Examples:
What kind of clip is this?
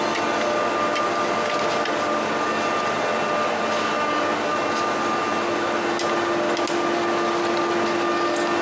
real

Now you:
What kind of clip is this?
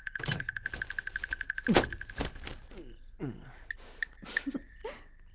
real